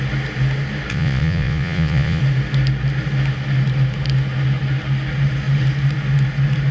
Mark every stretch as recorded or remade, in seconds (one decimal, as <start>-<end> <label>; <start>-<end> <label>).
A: 0.0-0.9 recorded; 0.9-2.2 remade; 2.2-6.7 recorded